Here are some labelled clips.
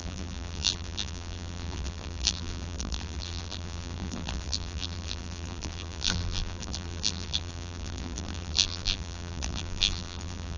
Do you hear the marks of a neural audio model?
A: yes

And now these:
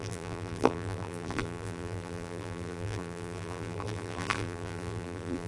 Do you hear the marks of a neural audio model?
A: yes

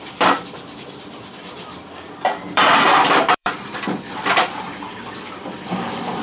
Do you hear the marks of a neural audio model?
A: yes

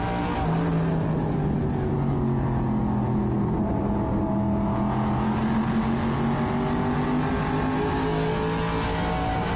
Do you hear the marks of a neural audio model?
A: no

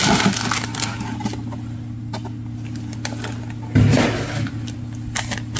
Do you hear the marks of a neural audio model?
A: no